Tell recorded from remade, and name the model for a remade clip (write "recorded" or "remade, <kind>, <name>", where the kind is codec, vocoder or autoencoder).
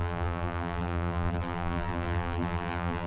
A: remade, vocoder, BigVGAN v2